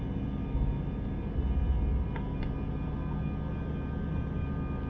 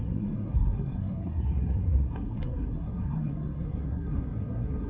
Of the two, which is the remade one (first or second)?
second